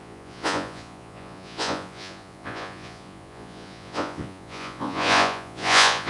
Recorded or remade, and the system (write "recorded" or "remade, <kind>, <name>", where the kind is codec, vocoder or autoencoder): remade, vocoder, Vocos